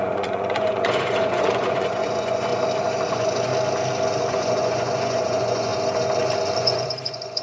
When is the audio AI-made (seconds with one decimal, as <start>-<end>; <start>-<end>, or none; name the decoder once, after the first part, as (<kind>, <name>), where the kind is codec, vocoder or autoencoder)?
0.0-2.5 (vocoder, Vocos); 3.1-3.5; 4.3-5.7; 6.6-7.4